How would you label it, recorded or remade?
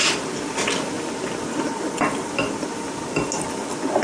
recorded